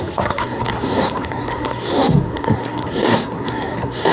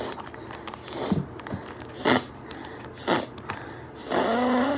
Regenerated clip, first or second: first